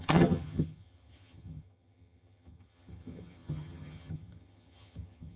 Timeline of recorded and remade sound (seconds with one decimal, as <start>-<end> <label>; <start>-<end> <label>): 0.0-5.4 remade